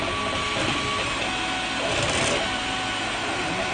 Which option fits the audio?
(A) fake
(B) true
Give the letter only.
B